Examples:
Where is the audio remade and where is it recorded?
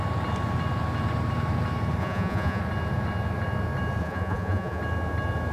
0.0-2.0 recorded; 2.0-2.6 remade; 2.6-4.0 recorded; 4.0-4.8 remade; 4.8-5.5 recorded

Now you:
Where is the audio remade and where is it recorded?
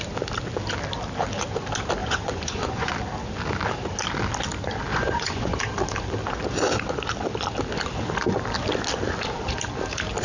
0.0-2.0 recorded; 2.0-2.9 remade; 2.9-4.9 recorded; 4.9-5.6 remade; 5.6-10.2 recorded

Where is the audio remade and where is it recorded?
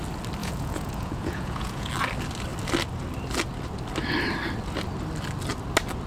0.0-0.4 recorded; 0.4-1.9 remade; 1.9-6.1 recorded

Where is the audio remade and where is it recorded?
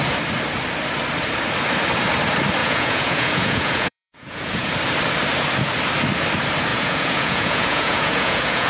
0.0-2.6 recorded; 2.6-4.7 remade; 4.7-6.7 recorded; 6.7-8.7 remade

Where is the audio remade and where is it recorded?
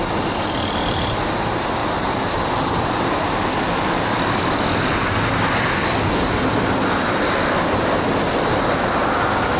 0.0-9.6 recorded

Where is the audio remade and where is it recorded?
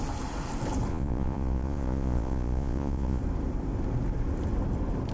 0.0-0.9 recorded; 0.9-3.2 remade; 3.2-5.1 recorded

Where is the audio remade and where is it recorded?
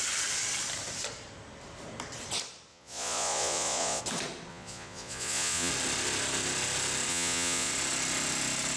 0.0-2.7 recorded; 2.7-4.0 remade; 4.0-4.5 recorded; 4.5-5.7 remade; 5.7-7.1 recorded; 7.1-7.7 remade; 7.7-8.8 recorded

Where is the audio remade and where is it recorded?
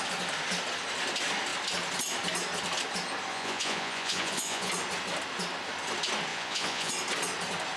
0.0-3.3 recorded; 3.3-4.7 remade; 4.7-6.3 recorded; 6.3-6.9 remade; 6.9-7.8 recorded